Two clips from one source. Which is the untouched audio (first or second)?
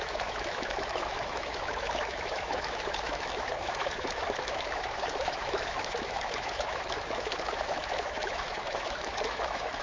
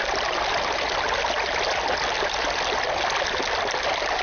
second